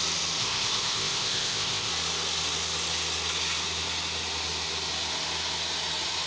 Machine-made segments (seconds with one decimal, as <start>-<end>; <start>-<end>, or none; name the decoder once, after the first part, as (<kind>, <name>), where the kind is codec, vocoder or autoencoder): 0.4-1.9 (codec, ZipCodec)